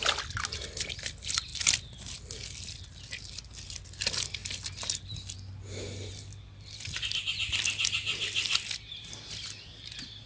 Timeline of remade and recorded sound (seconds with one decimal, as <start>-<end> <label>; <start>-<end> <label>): 0.0-10.3 recorded